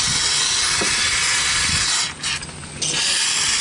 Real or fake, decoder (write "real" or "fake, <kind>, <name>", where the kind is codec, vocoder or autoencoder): real